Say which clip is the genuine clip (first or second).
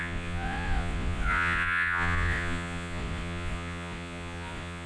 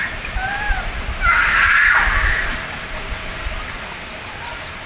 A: second